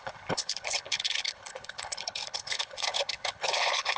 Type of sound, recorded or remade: remade